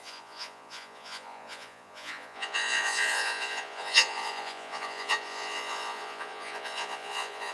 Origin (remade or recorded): remade